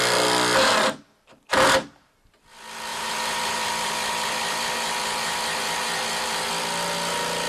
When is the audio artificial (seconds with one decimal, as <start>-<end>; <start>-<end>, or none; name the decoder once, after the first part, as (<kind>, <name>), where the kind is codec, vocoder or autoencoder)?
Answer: 2.9-6.5 (vocoder, BigVGAN v2)